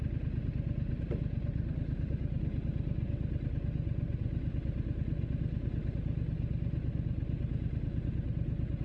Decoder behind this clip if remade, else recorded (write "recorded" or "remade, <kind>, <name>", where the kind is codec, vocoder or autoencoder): recorded